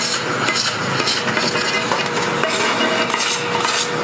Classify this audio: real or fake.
real